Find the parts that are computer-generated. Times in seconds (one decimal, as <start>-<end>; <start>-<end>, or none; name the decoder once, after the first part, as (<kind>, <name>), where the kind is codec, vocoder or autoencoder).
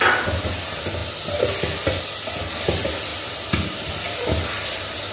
none